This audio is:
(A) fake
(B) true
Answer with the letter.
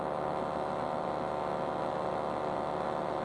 B